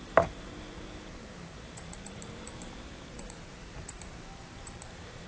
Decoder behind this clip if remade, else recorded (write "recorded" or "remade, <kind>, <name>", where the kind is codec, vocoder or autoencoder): remade, vocoder, BigVGAN v2